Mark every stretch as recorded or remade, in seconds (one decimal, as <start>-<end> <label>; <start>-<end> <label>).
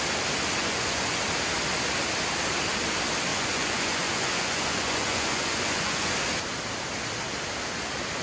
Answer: 0.0-0.6 recorded; 0.6-1.2 remade; 1.2-3.3 recorded; 3.3-6.1 remade; 6.1-8.2 recorded